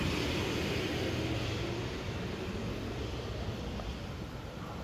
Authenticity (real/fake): real